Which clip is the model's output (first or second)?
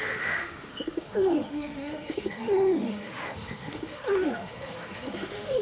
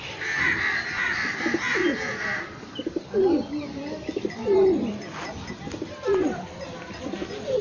first